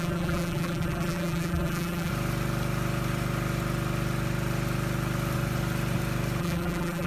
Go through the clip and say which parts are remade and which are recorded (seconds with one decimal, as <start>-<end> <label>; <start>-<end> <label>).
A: 0.0-2.1 remade; 2.1-6.4 recorded; 6.4-7.1 remade